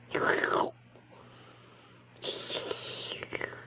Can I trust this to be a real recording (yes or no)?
yes